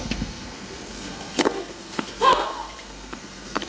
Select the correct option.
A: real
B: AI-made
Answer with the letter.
B